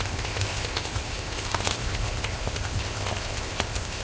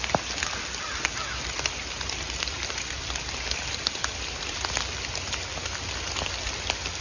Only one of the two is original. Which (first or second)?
second